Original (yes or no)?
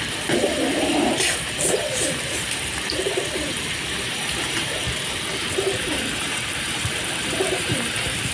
no